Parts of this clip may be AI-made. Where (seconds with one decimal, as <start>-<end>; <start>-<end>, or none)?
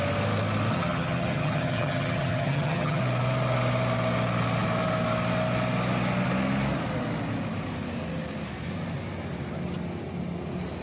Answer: 0.7-3.0